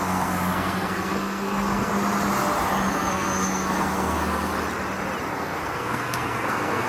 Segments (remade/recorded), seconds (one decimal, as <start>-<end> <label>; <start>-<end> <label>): 0.0-1.9 remade; 1.9-2.9 recorded; 2.9-4.5 remade; 4.5-5.3 recorded; 5.3-6.9 remade